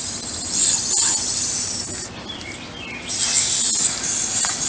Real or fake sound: real